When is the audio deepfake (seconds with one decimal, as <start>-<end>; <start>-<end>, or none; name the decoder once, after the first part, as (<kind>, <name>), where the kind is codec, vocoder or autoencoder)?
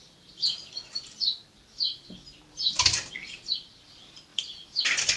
none